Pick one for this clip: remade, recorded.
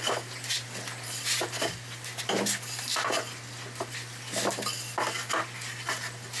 recorded